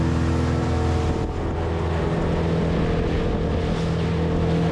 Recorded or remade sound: recorded